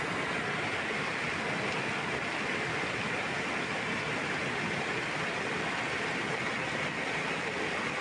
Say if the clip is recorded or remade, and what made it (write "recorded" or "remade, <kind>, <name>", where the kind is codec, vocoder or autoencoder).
recorded